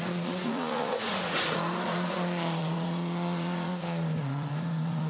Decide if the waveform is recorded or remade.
remade